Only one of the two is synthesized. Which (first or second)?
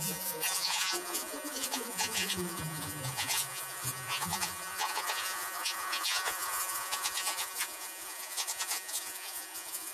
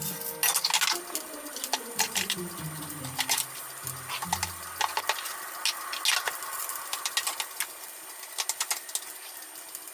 first